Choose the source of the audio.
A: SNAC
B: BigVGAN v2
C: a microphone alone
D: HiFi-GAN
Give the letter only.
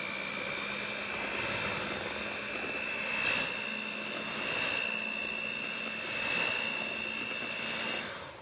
C